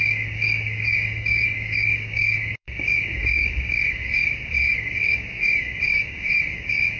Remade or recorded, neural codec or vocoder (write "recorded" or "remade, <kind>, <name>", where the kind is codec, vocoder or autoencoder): remade, codec, DAC